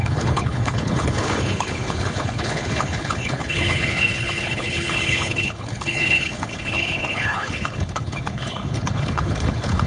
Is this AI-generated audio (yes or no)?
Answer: yes